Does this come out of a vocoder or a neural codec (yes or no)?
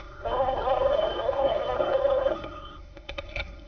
yes